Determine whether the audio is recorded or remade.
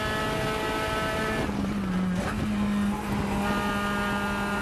recorded